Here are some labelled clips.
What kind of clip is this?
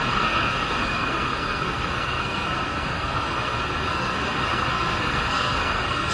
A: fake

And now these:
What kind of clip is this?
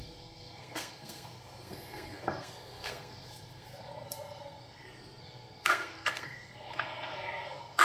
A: fake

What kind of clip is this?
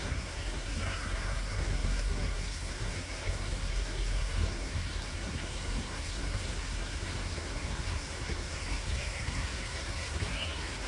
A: fake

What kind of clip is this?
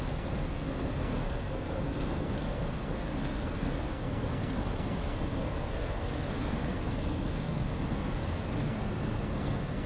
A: fake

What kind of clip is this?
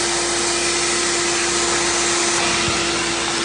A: real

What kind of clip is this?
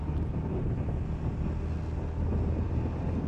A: real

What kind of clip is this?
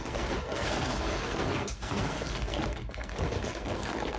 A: fake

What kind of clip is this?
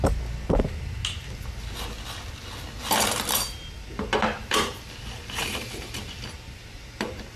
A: real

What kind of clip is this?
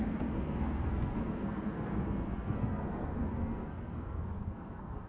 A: fake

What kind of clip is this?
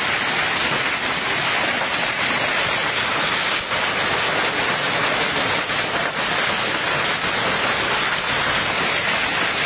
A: real